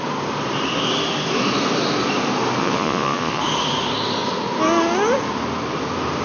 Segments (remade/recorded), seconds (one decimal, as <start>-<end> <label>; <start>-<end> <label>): 0.0-2.6 recorded; 2.6-3.4 remade; 3.4-6.2 recorded